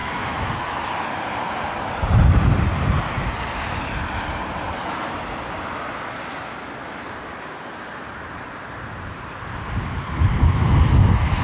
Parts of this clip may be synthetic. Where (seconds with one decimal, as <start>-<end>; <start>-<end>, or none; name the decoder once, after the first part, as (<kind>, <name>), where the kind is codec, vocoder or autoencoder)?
0.0-0.5 (autoencoder, DAC-VAE)

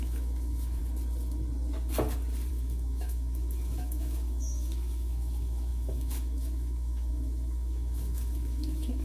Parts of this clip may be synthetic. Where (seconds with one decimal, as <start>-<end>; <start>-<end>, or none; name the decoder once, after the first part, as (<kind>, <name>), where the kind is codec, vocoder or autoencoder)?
0.0-0.8 (autoencoder, DAC-VAE); 2.5-9.0

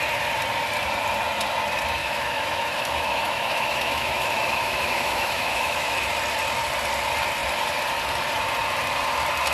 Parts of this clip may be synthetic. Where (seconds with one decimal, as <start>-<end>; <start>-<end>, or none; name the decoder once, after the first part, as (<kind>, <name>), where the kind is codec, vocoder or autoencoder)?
2.0-6.1 (autoencoder, DAC-VAE)